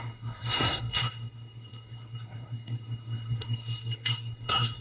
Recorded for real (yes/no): no